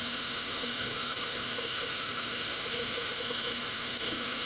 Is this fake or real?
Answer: fake